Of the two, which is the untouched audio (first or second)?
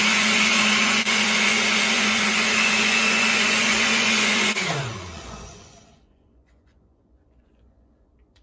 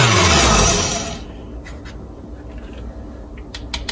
second